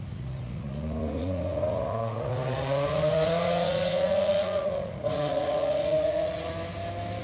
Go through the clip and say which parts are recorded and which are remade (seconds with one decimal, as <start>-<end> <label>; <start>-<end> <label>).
0.0-6.5 remade; 6.5-7.2 recorded